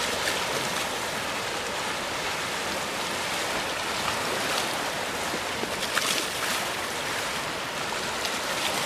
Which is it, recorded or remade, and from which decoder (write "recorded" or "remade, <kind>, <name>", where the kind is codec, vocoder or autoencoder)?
recorded